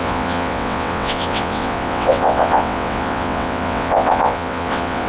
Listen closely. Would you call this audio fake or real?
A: fake